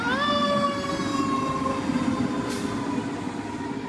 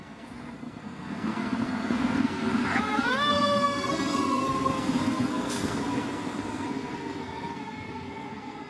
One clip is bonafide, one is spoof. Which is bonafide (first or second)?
first